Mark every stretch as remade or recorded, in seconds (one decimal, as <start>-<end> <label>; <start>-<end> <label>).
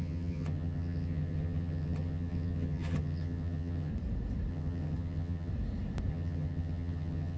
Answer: 0.0-3.9 remade; 3.9-4.5 recorded; 4.5-5.5 remade; 5.5-6.1 recorded; 6.1-7.4 remade